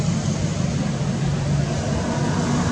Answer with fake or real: real